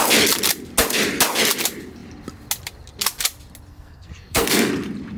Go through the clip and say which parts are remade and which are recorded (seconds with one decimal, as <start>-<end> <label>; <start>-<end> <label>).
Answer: 0.0-3.7 recorded; 3.7-4.7 remade; 4.7-5.2 recorded